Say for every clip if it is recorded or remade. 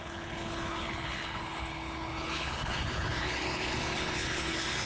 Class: remade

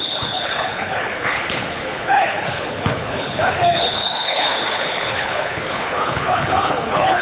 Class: remade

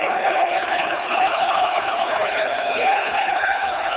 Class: remade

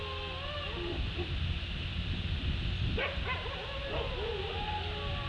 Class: recorded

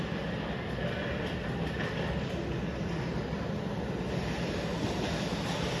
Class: recorded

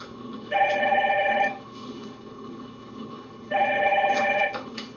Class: remade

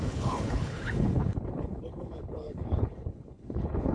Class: remade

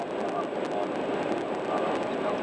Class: recorded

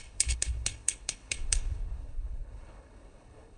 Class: remade